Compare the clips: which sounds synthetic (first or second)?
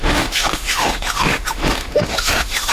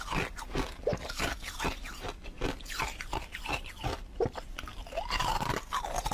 first